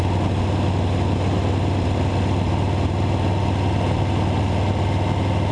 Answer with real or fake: real